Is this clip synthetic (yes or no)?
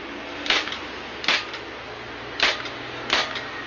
no